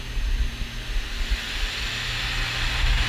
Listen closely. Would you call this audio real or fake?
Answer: real